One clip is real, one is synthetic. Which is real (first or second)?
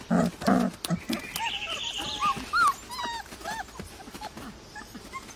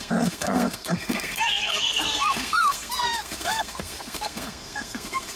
first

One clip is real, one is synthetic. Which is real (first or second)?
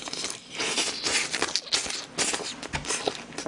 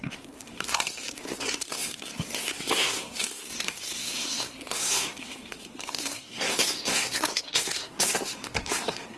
first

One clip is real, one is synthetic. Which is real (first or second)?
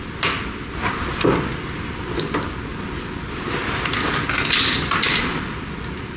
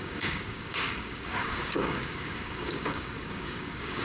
first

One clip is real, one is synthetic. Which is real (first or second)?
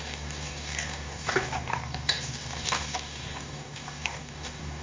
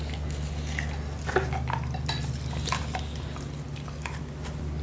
second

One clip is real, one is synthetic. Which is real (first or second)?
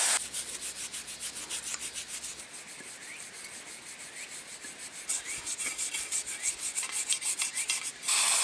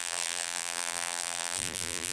first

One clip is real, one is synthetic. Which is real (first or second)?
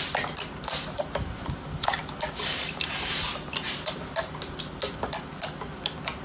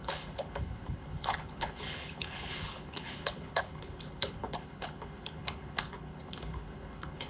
first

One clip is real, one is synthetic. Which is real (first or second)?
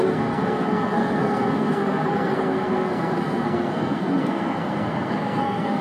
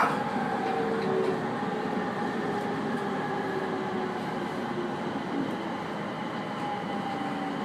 second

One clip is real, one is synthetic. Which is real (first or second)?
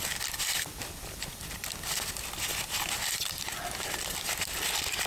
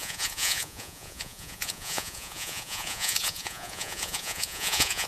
first